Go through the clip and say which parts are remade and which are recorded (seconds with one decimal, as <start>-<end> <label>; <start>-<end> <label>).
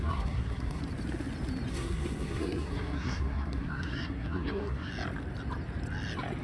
0.0-0.8 remade; 0.8-1.7 recorded; 1.7-4.9 remade; 4.9-6.4 recorded